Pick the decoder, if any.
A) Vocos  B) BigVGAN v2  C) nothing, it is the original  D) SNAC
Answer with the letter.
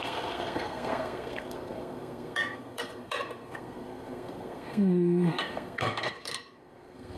D